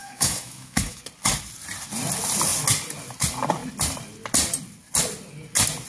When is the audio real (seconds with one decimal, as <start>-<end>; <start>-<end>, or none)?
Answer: 1.0-5.9